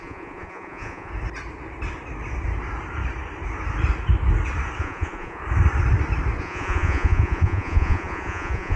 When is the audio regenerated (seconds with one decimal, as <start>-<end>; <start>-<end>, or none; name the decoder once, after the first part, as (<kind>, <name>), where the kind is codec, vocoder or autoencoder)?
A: 0.0-1.1 (vocoder, Vocos); 4.8-5.4; 6.4-8.8